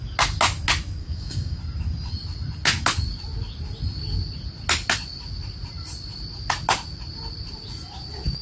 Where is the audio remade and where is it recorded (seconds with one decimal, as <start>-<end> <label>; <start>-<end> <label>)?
0.0-1.0 recorded; 1.0-1.6 remade; 1.6-8.4 recorded